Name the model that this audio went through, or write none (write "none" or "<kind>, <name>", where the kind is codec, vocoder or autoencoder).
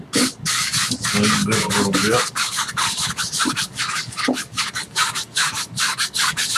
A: codec, DAC